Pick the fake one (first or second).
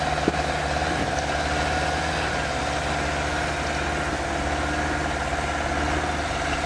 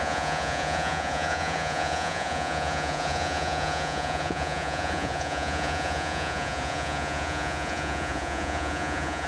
second